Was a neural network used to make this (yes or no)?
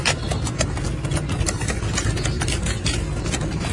no